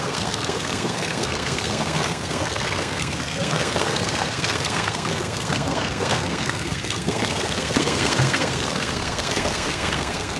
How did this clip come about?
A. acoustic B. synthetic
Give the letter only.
B